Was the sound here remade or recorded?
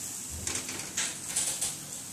recorded